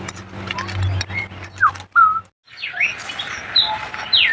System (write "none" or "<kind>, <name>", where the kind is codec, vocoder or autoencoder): none